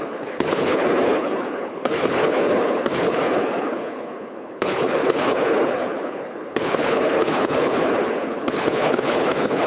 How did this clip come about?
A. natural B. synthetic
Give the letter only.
B